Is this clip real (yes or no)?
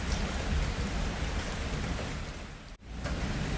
yes